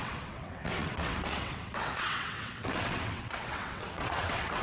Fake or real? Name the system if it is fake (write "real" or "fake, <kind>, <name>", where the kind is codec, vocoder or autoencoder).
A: fake, vocoder, WaveNeXt